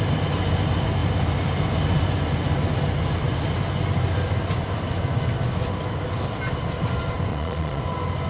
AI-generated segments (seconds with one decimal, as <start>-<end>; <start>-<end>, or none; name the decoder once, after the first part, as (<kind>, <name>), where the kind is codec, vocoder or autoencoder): 7.3-7.8 (vocoder, Vocos)